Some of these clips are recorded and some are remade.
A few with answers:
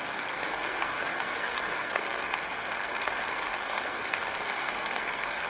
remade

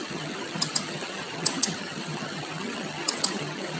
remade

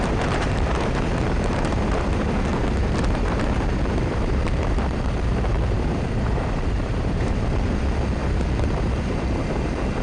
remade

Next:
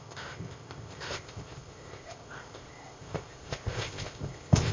remade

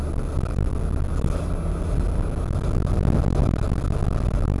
recorded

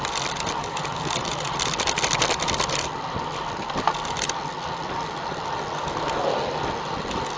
recorded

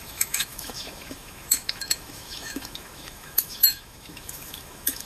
remade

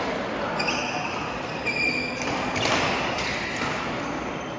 recorded